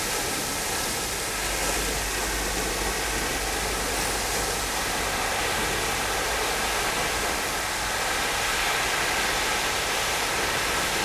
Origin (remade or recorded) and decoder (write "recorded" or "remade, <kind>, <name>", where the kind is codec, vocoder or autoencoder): recorded